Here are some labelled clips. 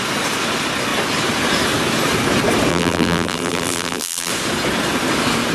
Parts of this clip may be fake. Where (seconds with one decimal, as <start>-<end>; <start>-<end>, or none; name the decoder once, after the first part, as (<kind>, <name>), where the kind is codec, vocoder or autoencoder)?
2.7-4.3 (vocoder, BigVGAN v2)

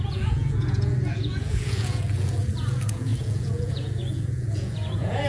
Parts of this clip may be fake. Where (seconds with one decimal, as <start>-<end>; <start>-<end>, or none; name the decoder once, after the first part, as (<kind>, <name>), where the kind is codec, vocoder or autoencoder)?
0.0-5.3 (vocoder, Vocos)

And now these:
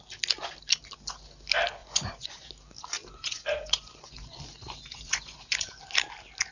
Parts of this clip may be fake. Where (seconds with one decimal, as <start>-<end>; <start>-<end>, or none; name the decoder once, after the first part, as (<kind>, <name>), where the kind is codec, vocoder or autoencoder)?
1.8-2.5 (vocoder, Vocos); 3.0-5.8